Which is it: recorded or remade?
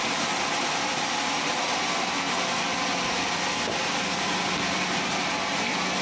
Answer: recorded